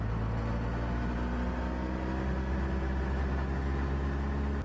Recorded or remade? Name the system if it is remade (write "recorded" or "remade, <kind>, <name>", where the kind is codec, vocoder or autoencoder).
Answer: recorded